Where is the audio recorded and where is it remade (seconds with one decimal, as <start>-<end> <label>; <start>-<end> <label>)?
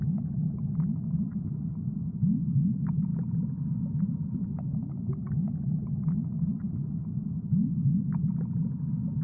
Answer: 0.0-9.2 recorded